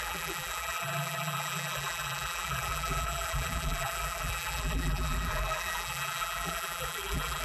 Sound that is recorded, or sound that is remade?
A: remade